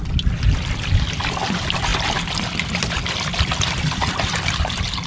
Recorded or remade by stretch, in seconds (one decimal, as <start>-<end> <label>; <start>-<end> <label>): 0.0-1.9 recorded; 1.9-5.1 remade